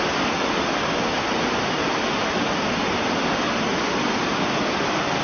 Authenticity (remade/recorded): recorded